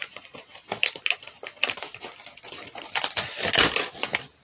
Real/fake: real